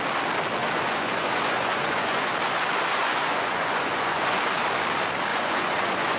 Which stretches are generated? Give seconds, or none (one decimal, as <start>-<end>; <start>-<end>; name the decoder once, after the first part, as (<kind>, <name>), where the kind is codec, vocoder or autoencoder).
0.6-2.3 (vocoder, Vocos); 3.0-4.4; 5.3-6.2